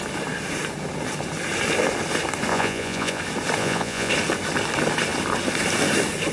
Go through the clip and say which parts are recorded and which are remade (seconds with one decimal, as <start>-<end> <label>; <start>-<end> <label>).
0.0-2.5 recorded; 2.5-3.2 remade; 3.2-3.6 recorded; 3.6-4.1 remade; 4.1-6.3 recorded